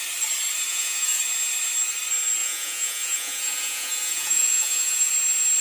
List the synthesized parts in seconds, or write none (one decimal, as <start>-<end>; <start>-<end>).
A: 0.7-1.2; 2.4-5.1